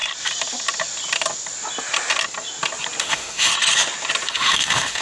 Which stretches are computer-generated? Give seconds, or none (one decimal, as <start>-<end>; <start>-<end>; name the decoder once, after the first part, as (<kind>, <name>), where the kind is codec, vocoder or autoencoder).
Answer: 3.0-3.5 (autoencoder, DAC-VAE); 4.3-5.0